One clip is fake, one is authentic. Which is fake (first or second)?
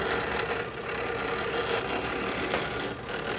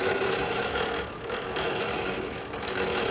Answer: second